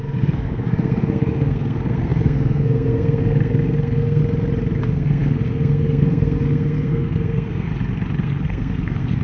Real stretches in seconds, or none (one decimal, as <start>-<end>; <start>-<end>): 4.2-4.8; 7.7-8.2